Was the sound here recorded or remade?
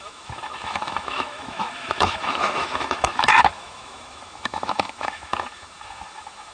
remade